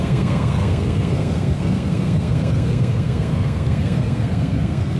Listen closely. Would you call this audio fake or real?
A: fake